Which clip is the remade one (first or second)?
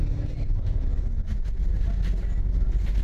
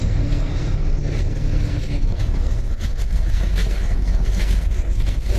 second